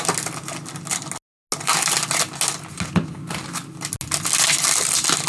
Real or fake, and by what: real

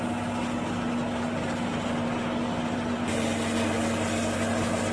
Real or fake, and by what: real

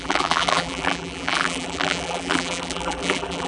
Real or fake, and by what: fake, vocoder, BigVGAN v2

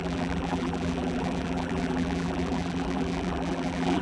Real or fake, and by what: fake, vocoder, BigVGAN v2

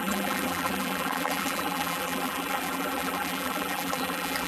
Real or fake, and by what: fake, vocoder, BigVGAN v2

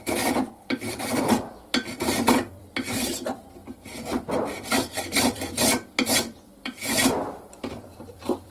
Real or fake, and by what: fake, vocoder, BigVGAN v2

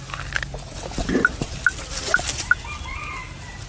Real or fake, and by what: real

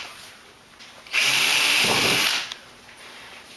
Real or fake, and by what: fake, vocoder, BigVGAN v2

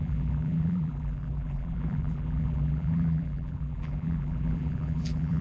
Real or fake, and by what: fake, vocoder, BigVGAN v2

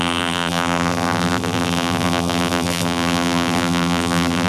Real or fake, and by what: fake, vocoder, BigVGAN v2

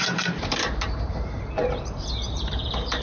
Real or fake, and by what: fake, vocoder, BigVGAN v2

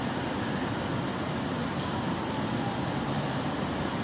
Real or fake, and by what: real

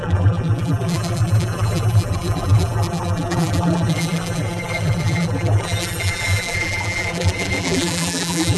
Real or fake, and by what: fake, vocoder, BigVGAN v2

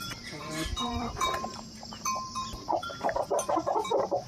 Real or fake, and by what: fake, vocoder, BigVGAN v2